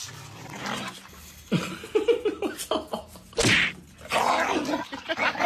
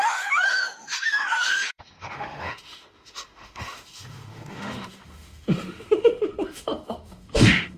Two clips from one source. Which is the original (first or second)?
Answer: first